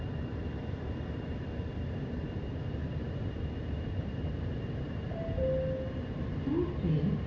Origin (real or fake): real